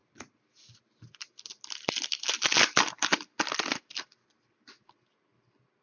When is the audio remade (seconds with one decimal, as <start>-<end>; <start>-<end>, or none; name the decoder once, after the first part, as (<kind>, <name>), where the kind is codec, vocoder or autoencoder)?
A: none